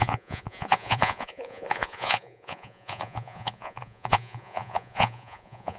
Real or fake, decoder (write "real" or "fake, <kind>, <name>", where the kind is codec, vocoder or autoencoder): fake, vocoder, Vocos